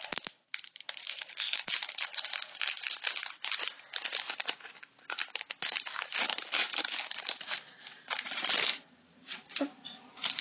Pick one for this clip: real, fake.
real